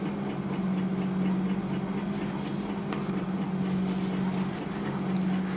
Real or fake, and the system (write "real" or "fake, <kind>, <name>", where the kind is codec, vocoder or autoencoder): real